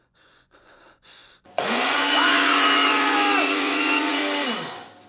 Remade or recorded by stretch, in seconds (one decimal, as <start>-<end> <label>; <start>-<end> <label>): 0.0-4.2 remade; 4.2-5.1 recorded